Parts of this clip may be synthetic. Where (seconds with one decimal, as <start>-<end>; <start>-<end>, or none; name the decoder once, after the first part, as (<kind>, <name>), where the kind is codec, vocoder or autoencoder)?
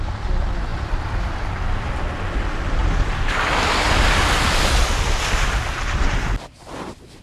0.7-1.9 (vocoder, BigVGAN v2); 2.8-6.6